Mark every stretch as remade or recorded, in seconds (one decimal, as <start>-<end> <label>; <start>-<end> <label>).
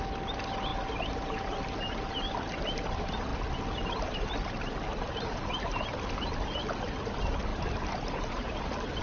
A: 0.0-9.0 recorded